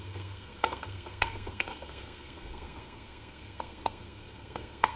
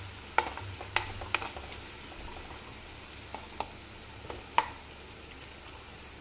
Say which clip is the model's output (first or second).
first